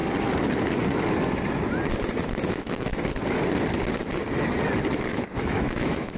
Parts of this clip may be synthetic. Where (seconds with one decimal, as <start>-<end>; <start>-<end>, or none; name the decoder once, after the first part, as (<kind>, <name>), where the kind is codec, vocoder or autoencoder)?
2.5-2.9 (autoencoder, DAC-VAE); 5.1-6.2